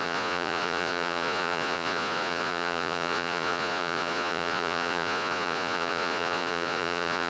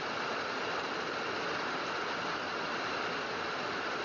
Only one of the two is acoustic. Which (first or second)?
second